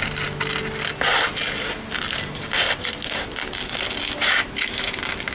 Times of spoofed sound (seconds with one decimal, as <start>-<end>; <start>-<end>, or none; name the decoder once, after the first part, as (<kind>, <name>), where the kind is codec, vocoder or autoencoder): none